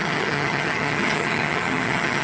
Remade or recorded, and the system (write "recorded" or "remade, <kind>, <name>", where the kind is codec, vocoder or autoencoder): remade, vocoder, HiFi-GAN